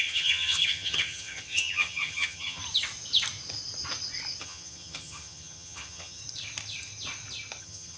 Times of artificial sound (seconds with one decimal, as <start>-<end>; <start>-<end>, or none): 0.0-2.6; 4.4-6.2; 7.6-8.0